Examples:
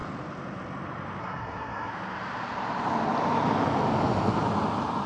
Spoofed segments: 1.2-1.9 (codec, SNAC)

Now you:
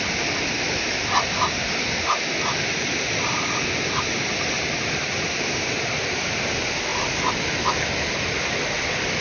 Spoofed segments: none

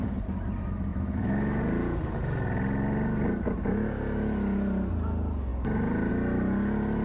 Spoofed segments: 0.9-1.6 (autoencoder, DAC-VAE)

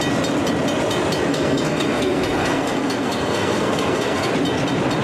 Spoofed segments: 1.3-4.3 (codec, SNAC)

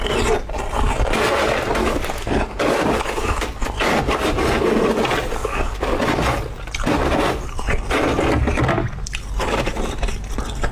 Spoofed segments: 1.8-3.7 (codec, DAC); 5.4-6.0

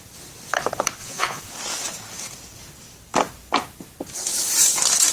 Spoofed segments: 1.0-1.5 (vocoder, Vocos)

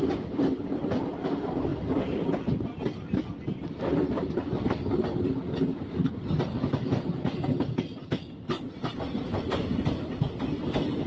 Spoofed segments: none

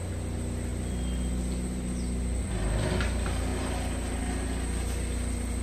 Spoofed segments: none